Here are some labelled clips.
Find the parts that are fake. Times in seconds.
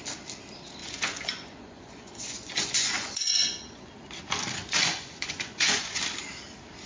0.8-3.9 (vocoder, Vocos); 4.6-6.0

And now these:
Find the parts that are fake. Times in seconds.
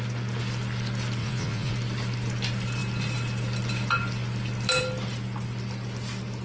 1.2-1.7 (vocoder, Vocos)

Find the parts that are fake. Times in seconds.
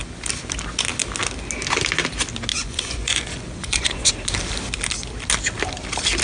2.5-4.1 (vocoder, Vocos)